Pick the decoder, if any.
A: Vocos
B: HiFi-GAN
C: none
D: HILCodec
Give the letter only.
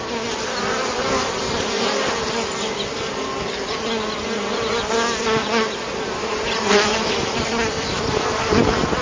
C